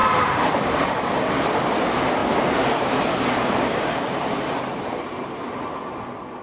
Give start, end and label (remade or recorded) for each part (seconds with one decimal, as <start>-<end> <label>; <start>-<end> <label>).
0.0-1.3 remade; 1.3-2.2 recorded; 2.2-6.0 remade; 6.0-6.4 recorded